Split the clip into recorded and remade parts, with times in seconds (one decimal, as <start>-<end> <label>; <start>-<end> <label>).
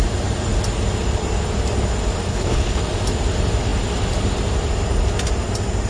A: 0.0-2.3 recorded; 2.3-2.8 remade; 2.8-5.9 recorded